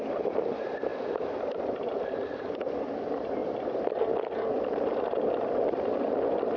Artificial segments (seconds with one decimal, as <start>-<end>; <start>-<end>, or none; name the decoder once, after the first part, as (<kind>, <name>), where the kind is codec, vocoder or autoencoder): 0.0-0.9 (vocoder, BigVGAN v2); 1.6-4.9